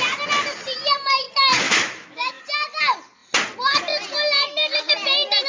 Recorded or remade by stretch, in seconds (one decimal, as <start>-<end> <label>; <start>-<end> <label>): 0.0-1.5 recorded; 1.5-2.4 remade; 2.4-5.5 recorded